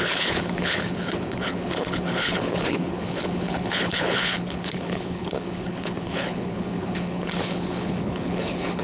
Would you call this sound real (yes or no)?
no